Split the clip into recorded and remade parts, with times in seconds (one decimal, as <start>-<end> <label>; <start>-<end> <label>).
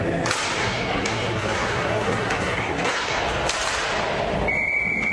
0.0-0.6 recorded; 0.6-3.2 remade; 3.2-5.1 recorded